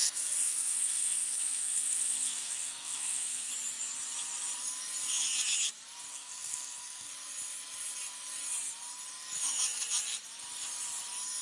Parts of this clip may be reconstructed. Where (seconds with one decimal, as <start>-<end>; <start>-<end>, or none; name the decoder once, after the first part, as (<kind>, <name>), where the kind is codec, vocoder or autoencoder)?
0.0-3.5 (codec, SNAC); 6.1-7.1